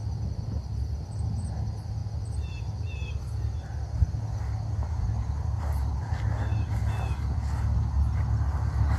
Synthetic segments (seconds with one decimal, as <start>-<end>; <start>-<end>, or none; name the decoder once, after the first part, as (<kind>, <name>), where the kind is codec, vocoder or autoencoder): none